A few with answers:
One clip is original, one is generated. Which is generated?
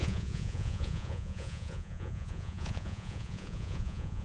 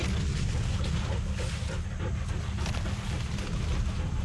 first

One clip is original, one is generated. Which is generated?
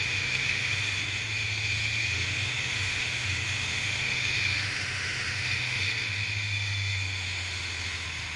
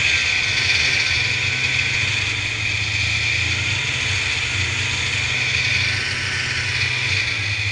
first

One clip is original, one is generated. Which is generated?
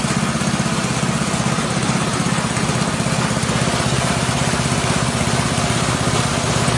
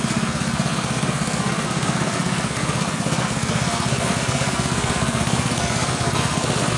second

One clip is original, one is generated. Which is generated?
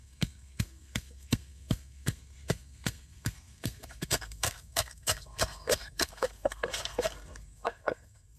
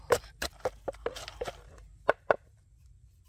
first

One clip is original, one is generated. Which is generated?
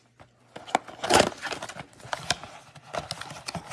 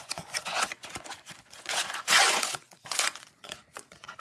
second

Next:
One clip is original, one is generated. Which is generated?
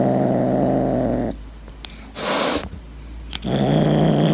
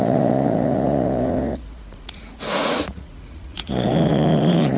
second